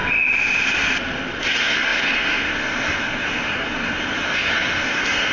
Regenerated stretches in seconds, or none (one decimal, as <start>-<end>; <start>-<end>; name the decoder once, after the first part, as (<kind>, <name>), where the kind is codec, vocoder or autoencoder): 1.4-5.3 (codec, SNAC)

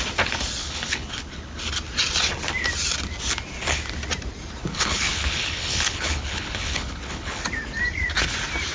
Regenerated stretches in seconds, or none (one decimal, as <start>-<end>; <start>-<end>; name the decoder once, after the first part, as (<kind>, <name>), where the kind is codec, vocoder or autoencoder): 0.6-1.6 (codec, HILCodec); 4.6-7.4

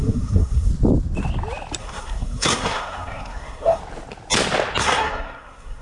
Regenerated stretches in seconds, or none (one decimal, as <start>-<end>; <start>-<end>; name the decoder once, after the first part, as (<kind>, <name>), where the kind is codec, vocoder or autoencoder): 0.0-0.7 (codec, SNAC); 1.8-3.8; 4.8-5.8